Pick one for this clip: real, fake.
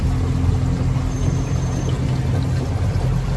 real